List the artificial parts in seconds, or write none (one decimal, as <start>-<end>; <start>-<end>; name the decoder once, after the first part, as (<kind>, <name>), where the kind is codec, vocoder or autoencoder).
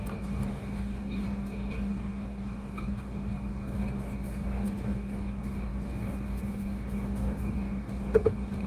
0.0-8.7 (codec, DAC)